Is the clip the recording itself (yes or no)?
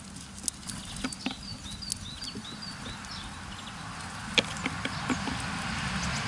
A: yes